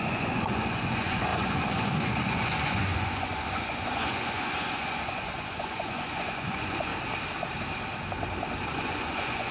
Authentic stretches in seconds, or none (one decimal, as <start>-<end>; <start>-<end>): 6.9-8.7